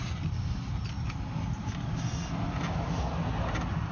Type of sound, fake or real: real